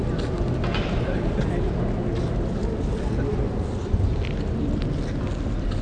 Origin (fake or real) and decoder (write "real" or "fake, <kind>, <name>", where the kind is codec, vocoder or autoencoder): real